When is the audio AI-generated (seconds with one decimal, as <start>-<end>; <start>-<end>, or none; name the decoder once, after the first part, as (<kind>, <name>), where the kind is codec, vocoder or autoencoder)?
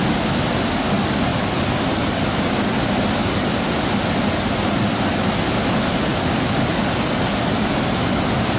none